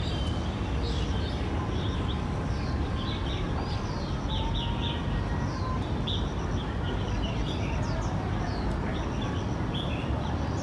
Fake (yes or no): no